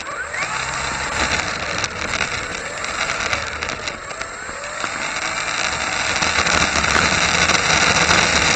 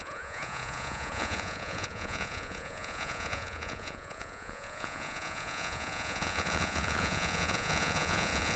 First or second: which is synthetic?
second